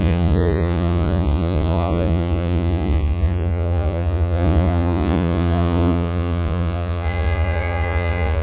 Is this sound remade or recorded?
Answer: remade